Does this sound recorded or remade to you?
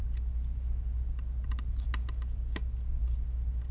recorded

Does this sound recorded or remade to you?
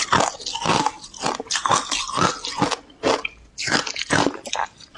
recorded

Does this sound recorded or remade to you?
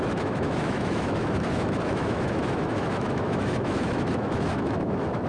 remade